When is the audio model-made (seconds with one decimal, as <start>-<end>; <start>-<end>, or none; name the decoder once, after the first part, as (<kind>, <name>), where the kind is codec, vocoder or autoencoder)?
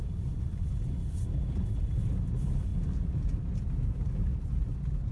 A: none